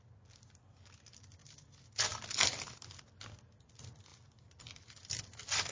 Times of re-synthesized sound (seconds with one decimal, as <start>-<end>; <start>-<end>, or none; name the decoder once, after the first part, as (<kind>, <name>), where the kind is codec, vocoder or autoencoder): none